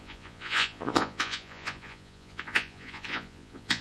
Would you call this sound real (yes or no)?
no